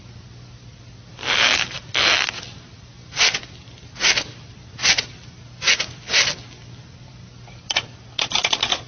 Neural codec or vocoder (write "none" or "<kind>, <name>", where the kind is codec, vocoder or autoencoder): vocoder, BigVGAN v2